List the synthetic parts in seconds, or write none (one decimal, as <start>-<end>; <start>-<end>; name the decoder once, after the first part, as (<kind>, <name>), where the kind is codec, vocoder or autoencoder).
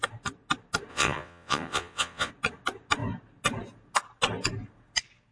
0.9-2.3 (vocoder, WaveNeXt)